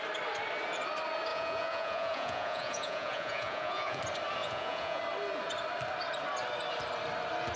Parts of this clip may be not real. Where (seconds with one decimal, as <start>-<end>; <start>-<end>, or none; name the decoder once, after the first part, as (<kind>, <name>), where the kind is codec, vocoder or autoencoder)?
1.3-4.0 (vocoder, Vocos); 4.4-5.0